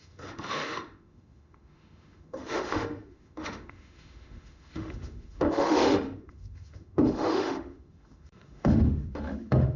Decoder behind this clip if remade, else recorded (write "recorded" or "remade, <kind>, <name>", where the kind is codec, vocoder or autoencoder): remade, autoencoder, DAC-VAE